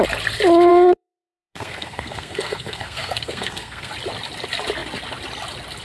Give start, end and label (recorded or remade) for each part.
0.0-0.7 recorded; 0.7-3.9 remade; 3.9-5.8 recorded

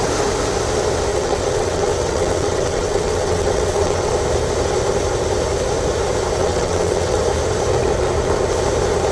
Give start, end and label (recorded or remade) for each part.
0.0-1.1 recorded; 1.1-4.1 remade; 4.1-6.4 recorded; 6.4-7.2 remade; 7.2-9.1 recorded

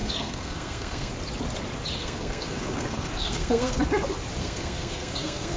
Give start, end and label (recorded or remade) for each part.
0.0-1.1 remade; 1.1-2.0 recorded; 2.0-3.8 remade; 3.8-4.4 recorded; 4.4-5.6 remade

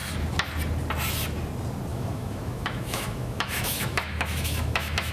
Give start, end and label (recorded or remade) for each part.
0.0-1.9 recorded; 1.9-5.1 remade

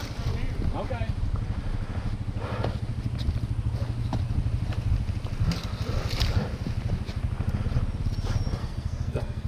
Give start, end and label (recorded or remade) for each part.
0.0-8.6 recorded; 8.6-9.5 remade

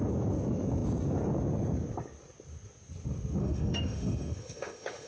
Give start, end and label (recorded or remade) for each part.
0.0-3.4 recorded; 3.4-5.1 remade

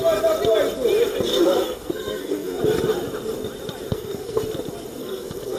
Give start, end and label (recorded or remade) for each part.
0.0-1.3 recorded; 1.3-2.6 remade; 2.6-3.9 recorded; 3.9-4.4 remade; 4.4-5.0 recorded; 5.0-5.6 remade

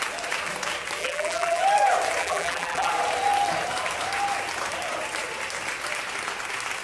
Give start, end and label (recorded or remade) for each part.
0.0-1.0 recorded; 1.0-1.6 remade; 1.6-2.2 recorded; 2.2-2.9 remade; 2.9-6.8 recorded